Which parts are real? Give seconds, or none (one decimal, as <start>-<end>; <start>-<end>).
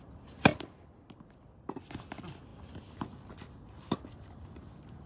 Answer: 0.0-5.1